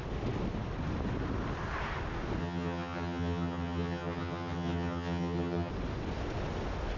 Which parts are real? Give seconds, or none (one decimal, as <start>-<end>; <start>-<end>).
0.0-2.4; 5.7-7.0